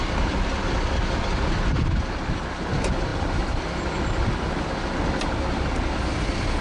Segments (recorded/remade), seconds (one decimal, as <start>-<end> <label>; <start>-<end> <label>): 0.0-6.6 recorded